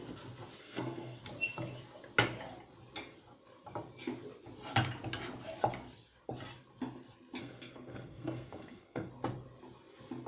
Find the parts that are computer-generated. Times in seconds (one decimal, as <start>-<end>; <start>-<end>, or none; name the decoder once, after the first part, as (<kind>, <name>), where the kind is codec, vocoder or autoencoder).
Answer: 0.6-1.2 (codec, SNAC); 7.4-9.1